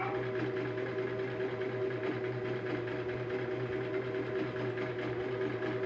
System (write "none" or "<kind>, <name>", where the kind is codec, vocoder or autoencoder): none